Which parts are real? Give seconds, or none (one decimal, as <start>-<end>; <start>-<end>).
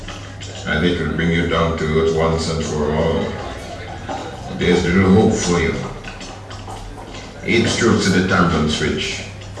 0.0-9.6